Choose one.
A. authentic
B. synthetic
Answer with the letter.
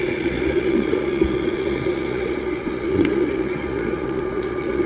B